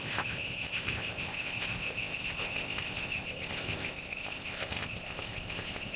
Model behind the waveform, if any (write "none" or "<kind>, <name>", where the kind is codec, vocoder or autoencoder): codec, ZipCodec